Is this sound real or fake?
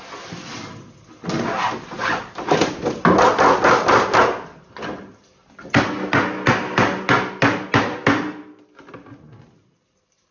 real